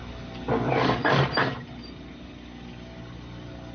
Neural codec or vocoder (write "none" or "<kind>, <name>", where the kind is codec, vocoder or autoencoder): none